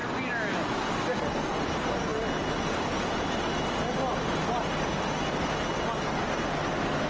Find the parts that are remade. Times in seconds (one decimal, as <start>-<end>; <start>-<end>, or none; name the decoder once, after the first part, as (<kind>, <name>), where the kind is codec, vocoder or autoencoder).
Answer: none